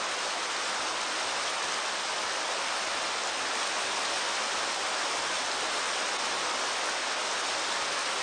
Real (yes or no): yes